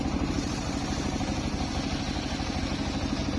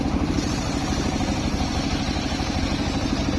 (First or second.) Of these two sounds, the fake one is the second